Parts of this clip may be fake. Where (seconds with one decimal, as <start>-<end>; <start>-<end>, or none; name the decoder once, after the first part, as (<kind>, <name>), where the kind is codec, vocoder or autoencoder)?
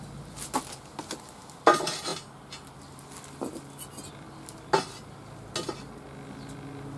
none